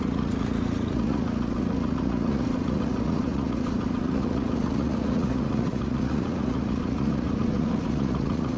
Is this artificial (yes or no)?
yes